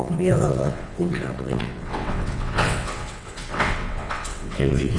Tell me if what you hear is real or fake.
fake